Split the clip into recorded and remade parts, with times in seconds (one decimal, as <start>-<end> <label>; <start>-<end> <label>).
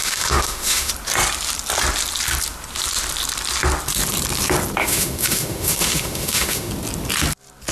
0.0-0.9 remade; 0.9-4.8 recorded; 4.8-6.7 remade; 6.7-7.7 recorded